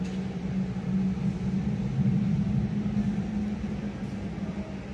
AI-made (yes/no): no